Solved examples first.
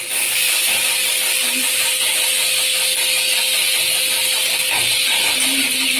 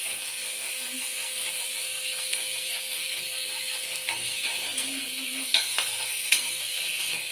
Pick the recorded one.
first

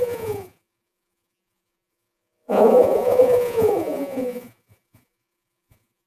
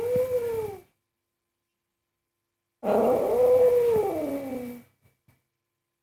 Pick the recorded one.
second